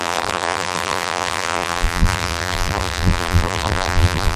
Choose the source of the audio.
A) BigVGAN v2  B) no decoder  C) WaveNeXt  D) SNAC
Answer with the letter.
A